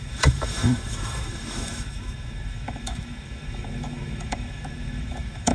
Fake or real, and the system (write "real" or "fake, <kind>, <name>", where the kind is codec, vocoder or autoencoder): fake, autoencoder, DAC-VAE